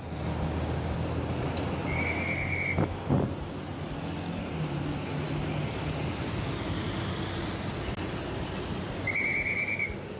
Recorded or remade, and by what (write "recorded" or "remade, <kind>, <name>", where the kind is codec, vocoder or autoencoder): recorded